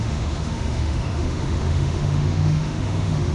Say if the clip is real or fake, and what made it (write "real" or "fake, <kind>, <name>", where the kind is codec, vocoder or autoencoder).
fake, autoencoder, DAC-VAE